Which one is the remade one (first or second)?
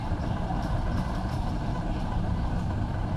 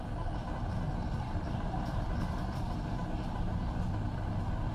first